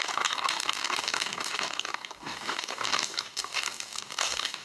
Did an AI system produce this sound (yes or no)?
yes